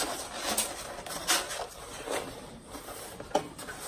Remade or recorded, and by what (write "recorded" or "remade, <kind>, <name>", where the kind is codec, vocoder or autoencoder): recorded